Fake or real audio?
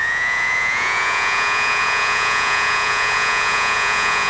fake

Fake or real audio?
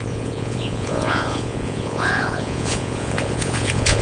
fake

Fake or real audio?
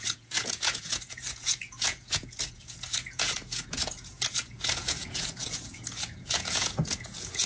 fake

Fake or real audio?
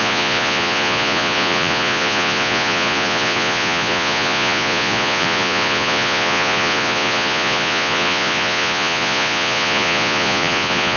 fake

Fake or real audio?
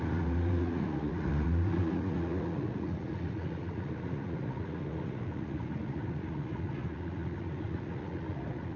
fake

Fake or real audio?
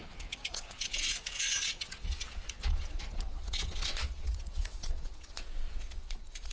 fake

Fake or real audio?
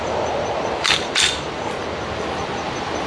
real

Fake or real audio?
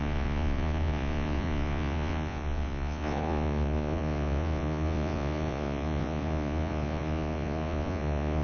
fake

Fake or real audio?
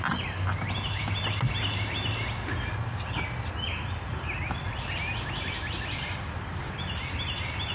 real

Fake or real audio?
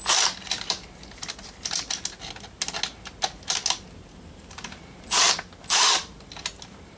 real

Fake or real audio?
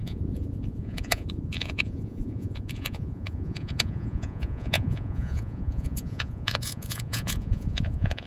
fake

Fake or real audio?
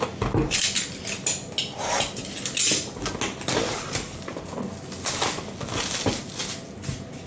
real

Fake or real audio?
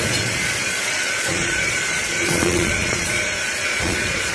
fake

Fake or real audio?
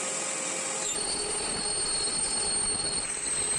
real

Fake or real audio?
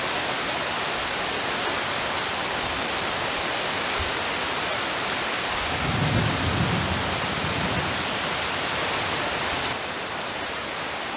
real